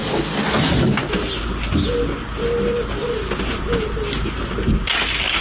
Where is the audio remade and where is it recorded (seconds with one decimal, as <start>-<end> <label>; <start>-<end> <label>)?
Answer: 0.0-5.4 recorded